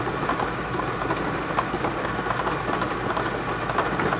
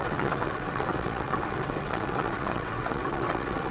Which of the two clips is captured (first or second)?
first